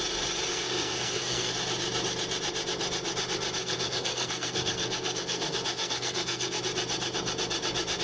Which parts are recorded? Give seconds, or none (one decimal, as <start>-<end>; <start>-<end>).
0.0-0.5; 1.5-3.6; 6.6-8.0